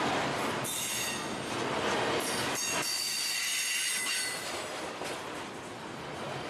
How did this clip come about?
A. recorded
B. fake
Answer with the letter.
A